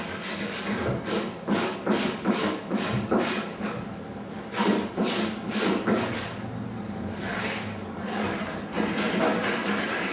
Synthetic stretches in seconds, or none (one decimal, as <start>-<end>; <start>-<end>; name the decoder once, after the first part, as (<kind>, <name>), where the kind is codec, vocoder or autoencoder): 0.0-8.7 (codec, DAC); 9.2-10.1